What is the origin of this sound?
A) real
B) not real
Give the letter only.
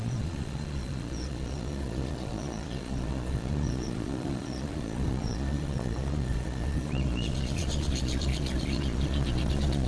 B